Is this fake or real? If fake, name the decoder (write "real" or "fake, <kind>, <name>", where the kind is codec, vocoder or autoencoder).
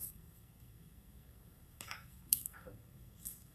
fake, codec, SNAC